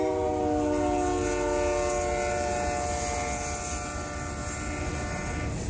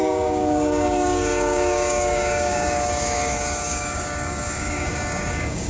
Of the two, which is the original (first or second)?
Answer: first